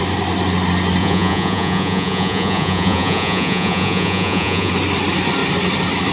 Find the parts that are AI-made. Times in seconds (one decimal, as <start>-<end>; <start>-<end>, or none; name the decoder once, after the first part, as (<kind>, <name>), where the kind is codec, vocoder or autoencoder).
1.0-4.7 (vocoder, Vocos)